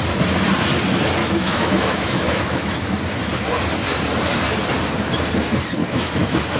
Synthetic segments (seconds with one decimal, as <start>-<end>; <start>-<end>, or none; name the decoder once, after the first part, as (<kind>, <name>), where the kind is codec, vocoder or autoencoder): 1.2-2.8 (autoencoder, DAC-VAE); 5.8-6.6

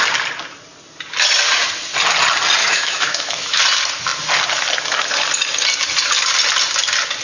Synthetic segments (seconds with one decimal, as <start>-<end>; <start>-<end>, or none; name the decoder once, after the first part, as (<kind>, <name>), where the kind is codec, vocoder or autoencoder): 2.6-3.6 (autoencoder, DAC-VAE)

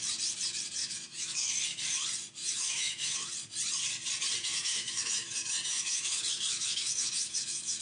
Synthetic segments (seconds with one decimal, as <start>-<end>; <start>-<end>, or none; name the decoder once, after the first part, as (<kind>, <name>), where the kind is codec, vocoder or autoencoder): 0.8-1.5 (autoencoder, DAC-VAE); 2.4-3.3; 4.4-7.8

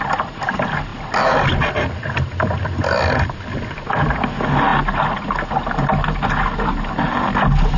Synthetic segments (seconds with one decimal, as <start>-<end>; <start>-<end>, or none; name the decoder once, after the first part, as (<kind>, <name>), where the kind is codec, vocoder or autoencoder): none

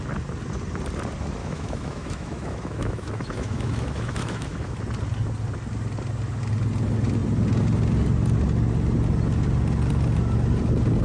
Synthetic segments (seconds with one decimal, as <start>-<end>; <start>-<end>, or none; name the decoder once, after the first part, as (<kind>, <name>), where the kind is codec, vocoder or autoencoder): 1.4-4.8 (autoencoder, DAC-VAE)

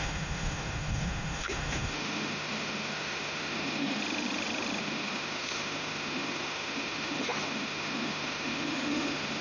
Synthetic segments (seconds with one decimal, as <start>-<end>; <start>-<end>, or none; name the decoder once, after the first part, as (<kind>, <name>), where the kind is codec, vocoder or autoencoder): 0.0-4.0 (autoencoder, DAC-VAE); 4.8-9.4

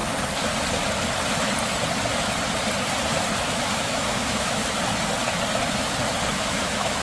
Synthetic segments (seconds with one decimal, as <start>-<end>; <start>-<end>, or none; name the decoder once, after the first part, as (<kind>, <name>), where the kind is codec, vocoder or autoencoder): 3.7-4.6 (autoencoder, DAC-VAE); 6.3-7.0

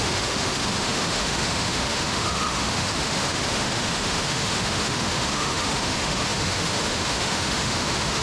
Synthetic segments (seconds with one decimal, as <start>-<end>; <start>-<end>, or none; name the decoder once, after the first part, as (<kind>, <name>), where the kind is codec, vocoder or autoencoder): 0.0-8.2 (autoencoder, DAC-VAE)